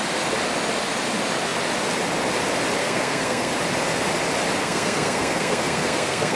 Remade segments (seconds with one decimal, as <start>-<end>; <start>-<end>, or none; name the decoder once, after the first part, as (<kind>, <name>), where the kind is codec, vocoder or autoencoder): 2.8-3.5 (codec, SNAC); 4.6-6.4